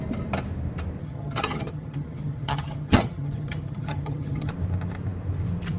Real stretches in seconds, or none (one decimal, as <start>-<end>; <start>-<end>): 0.0-1.0; 4.5-5.8